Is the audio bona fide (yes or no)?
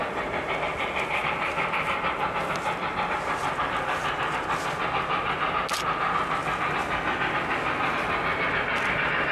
yes